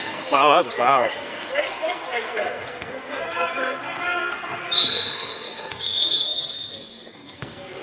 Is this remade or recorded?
remade